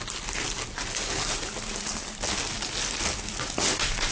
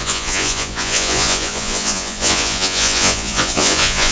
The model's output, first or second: second